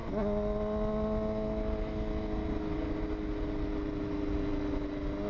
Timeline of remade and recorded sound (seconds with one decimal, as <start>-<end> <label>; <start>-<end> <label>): 0.0-5.3 recorded